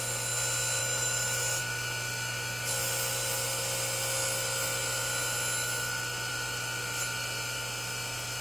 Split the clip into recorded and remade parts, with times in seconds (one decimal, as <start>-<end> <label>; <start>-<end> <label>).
0.0-0.8 recorded; 0.8-1.6 remade; 1.6-8.4 recorded